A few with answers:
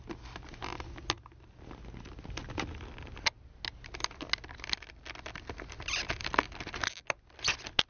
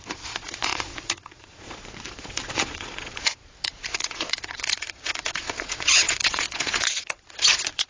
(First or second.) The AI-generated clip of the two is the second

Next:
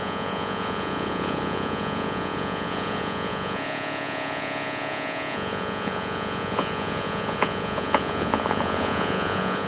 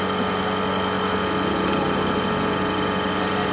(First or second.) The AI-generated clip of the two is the first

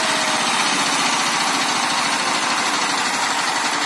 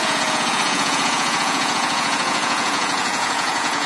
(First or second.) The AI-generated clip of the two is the second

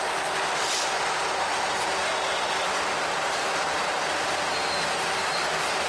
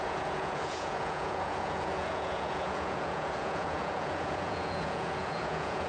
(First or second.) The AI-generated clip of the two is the second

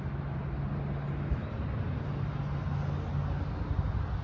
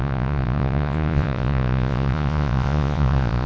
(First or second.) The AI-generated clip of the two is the second